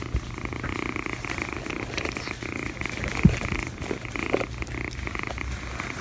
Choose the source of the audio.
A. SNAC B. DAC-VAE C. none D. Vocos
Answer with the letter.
C